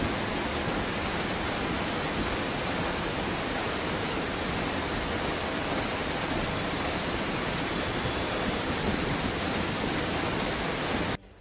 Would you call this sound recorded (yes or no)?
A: yes